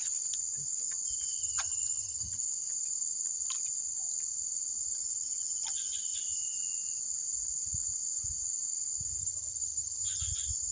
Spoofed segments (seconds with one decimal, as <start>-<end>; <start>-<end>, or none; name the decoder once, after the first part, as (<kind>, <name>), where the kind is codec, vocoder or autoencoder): 1.4-2.4 (vocoder, HiFi-GAN); 9.2-10.2